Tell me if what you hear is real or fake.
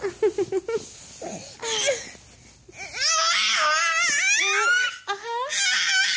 real